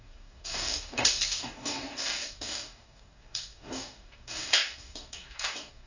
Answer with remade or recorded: remade